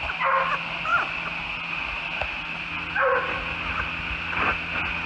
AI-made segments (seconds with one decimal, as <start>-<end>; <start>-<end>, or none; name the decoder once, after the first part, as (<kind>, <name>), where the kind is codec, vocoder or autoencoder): none